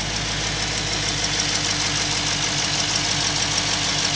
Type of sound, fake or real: real